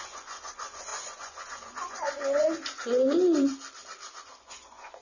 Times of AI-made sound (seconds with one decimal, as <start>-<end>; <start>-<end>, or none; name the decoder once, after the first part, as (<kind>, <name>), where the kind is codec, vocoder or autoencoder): 0.0-3.5 (vocoder, Vocos); 4.4-5.0